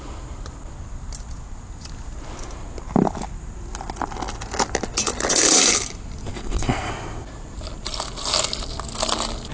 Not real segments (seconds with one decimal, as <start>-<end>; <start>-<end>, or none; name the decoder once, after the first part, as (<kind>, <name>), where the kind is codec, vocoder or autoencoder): 6.3-6.9 (codec, SNAC)